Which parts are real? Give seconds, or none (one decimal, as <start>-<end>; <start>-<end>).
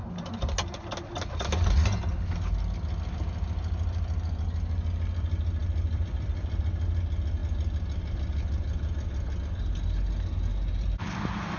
0.0-5.6; 6.6-10.5